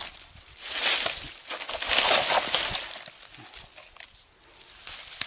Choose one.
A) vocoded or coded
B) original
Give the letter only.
B